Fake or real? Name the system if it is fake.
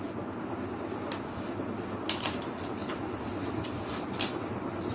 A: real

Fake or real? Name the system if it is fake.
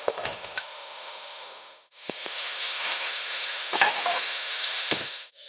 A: fake, autoencoder, DAC-VAE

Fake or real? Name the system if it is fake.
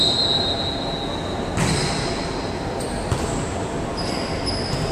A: real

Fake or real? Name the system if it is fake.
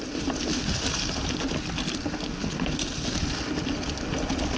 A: real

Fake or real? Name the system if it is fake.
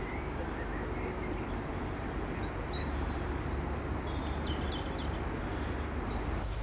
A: real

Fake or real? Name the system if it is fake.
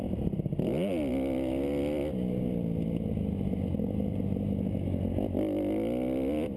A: real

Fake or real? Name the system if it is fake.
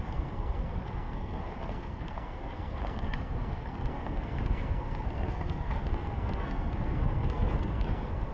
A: fake, codec, SNAC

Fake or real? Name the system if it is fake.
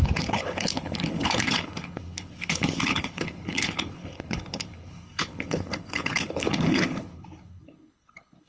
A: fake, codec, HILCodec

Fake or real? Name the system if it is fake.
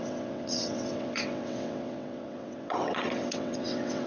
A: fake, vocoder, WaveNeXt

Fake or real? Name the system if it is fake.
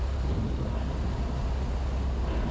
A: real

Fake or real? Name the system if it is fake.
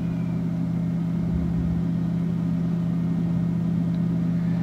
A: real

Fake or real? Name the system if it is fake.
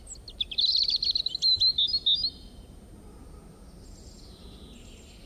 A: real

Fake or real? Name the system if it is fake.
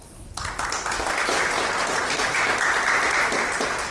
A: real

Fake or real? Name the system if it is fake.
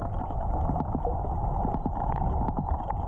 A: real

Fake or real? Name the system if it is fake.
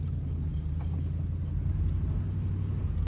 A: real